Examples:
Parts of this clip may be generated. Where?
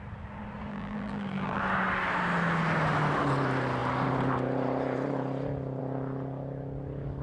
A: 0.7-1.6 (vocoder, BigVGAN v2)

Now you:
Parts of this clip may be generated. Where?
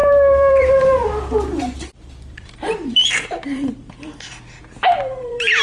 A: 0.6-5.6 (vocoder, BigVGAN v2)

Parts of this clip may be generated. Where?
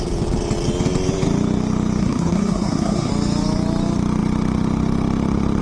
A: 2.0-3.1 (codec, SNAC)